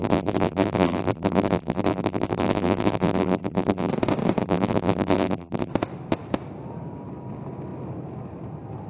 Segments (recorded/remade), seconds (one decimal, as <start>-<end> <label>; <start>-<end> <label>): 0.0-3.9 remade; 3.9-4.4 recorded; 4.4-5.7 remade; 5.7-8.9 recorded

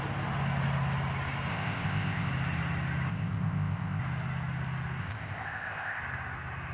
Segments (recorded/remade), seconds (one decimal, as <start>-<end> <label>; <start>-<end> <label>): 0.0-1.5 recorded; 1.5-2.3 remade; 2.3-3.1 recorded; 3.1-4.0 remade; 4.0-5.0 recorded; 5.0-6.0 remade; 6.0-6.7 recorded

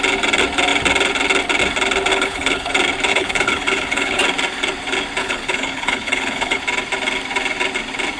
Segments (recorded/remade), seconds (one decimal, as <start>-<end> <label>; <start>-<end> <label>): 0.0-2.1 recorded; 2.1-2.7 remade; 2.7-3.1 recorded; 3.1-4.2 remade; 4.2-5.2 recorded; 5.2-6.6 remade; 6.6-8.2 recorded

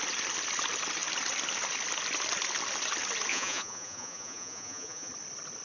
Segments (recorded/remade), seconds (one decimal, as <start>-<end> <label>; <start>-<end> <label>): 0.0-3.3 recorded; 3.3-5.1 remade; 5.1-5.6 recorded